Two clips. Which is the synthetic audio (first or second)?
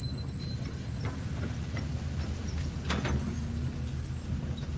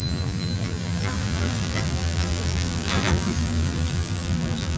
second